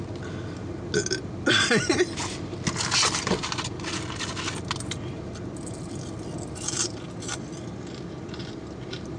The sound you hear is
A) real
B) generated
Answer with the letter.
A